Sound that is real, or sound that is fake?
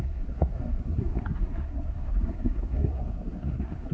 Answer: fake